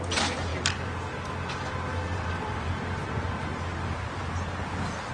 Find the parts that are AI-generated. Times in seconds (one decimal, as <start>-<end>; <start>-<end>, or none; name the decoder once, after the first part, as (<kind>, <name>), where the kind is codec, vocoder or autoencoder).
0.5-1.3 (vocoder, BigVGAN v2); 1.9-3.0